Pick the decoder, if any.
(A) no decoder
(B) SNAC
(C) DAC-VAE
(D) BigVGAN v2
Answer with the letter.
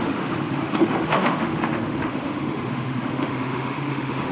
C